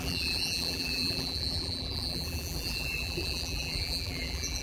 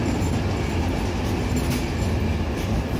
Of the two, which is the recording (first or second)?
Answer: second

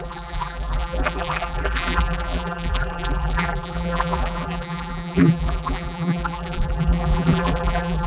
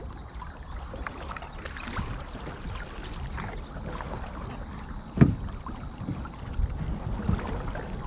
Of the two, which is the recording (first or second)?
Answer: second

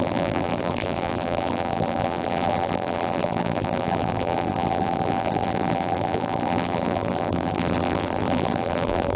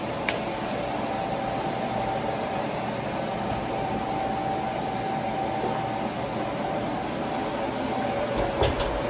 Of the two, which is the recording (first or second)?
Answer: second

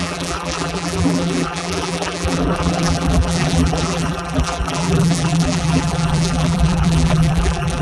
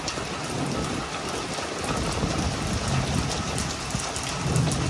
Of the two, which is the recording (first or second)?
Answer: second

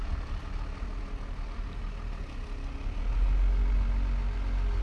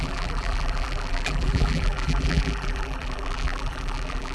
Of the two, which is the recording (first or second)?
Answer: first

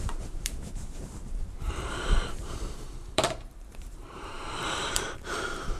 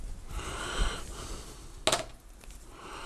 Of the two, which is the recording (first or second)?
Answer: second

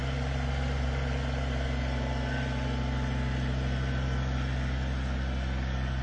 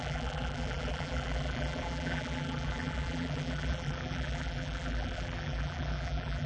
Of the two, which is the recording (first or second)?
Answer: first